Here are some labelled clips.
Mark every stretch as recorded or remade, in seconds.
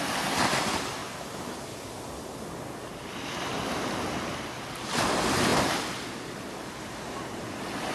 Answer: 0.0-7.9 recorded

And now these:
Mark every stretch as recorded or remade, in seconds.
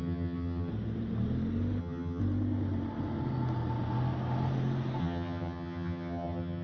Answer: 0.0-0.7 remade; 0.7-1.8 recorded; 1.8-2.2 remade; 2.2-5.0 recorded; 5.0-6.6 remade